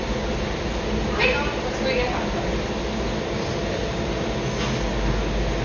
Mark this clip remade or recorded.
recorded